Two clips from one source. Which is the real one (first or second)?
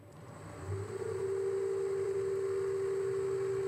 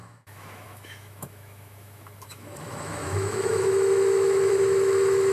first